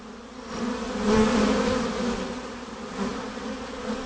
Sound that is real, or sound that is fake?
real